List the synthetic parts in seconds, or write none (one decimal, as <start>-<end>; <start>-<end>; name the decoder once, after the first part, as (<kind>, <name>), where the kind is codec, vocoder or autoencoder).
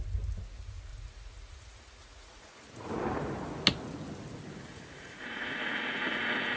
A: 0.9-2.9 (vocoder, Vocos); 4.7-6.6